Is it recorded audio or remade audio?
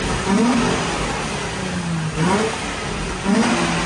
recorded